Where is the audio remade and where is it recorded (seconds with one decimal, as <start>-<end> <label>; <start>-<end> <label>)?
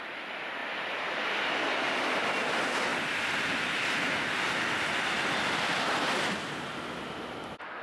0.0-0.6 recorded; 0.6-1.6 remade; 1.6-7.8 recorded